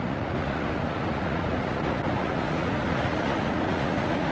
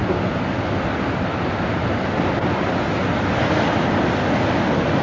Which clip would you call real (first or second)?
second